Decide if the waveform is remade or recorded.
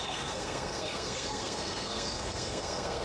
remade